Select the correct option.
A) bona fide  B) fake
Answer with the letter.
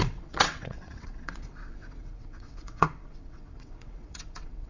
B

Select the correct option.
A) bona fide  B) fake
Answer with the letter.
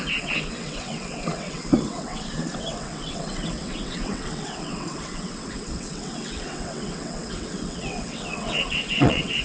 B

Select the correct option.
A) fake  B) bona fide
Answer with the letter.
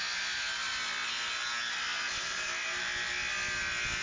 B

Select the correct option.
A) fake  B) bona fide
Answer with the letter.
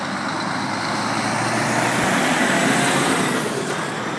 B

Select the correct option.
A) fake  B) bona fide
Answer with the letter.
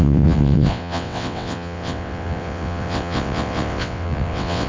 A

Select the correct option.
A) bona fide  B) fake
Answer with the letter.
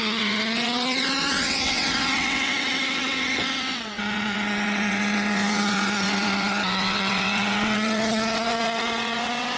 B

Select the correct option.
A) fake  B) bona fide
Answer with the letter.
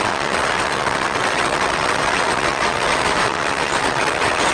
A